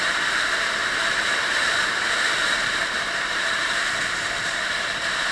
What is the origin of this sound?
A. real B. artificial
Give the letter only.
B